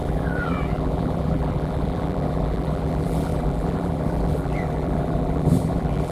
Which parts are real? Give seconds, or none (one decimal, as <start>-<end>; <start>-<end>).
none